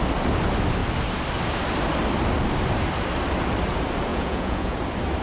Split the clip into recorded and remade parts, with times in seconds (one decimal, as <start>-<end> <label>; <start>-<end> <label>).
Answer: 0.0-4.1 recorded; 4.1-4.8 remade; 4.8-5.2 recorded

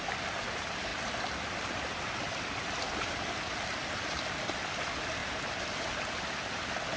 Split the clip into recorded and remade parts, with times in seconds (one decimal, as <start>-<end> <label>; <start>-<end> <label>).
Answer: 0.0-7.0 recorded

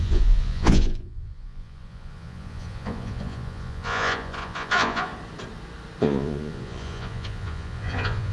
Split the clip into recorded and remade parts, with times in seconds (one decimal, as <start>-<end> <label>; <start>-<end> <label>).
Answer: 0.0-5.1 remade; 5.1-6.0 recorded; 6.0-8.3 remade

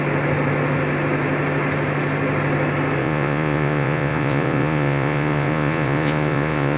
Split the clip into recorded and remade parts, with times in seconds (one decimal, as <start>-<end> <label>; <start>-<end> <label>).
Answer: 0.0-3.0 recorded; 3.0-6.8 remade

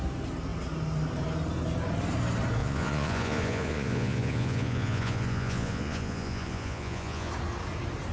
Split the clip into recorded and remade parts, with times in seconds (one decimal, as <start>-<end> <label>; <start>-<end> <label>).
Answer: 0.0-2.6 recorded; 2.6-7.3 remade; 7.3-8.1 recorded